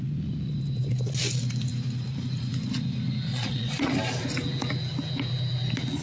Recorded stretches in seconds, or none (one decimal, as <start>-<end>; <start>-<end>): 0.0-3.3; 3.9-6.0